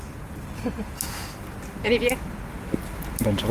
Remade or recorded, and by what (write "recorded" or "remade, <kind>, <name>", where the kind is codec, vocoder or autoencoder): recorded